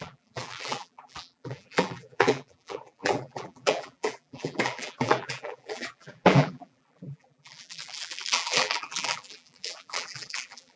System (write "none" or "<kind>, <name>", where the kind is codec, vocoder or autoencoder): vocoder, BigVGAN v2